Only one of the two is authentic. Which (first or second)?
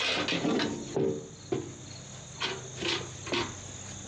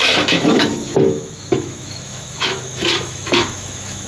first